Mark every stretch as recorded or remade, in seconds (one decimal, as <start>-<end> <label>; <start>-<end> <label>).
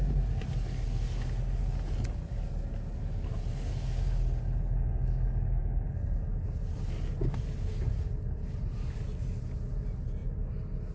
0.0-10.9 recorded